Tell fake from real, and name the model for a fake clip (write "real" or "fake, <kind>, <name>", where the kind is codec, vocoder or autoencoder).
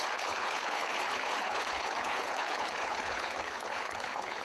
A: fake, codec, HILCodec